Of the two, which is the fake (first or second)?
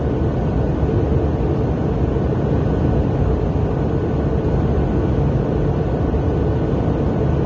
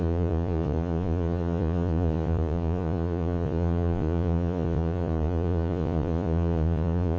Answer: second